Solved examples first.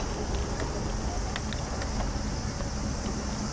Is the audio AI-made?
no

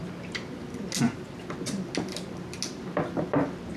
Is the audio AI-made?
no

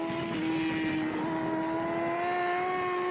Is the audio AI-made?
no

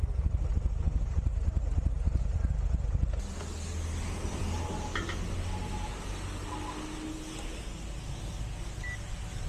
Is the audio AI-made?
no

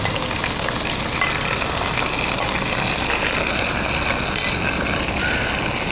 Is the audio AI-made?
no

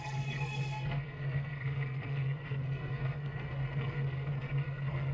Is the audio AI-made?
yes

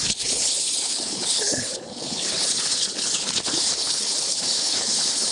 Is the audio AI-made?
yes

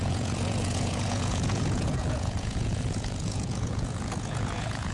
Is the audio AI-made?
yes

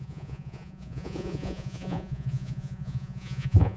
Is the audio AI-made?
yes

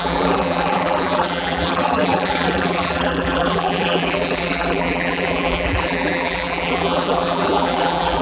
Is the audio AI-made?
yes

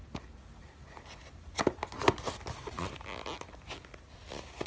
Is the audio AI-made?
no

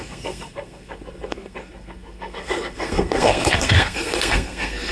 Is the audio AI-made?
yes